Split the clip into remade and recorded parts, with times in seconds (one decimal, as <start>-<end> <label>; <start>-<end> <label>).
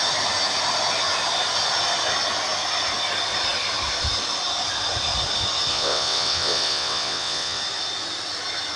0.0-5.7 recorded; 5.7-7.6 remade; 7.6-8.8 recorded